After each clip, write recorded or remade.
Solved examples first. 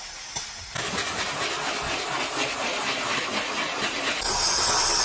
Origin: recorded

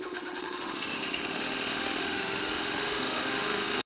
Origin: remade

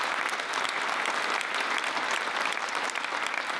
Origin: recorded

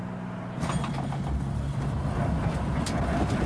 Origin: recorded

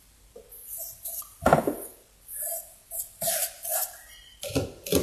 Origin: recorded